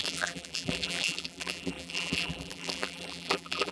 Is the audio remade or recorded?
remade